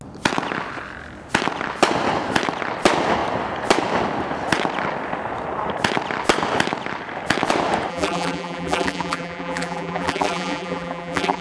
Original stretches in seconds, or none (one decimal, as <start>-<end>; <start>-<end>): 0.0-7.9